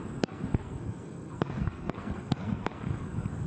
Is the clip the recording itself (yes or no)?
no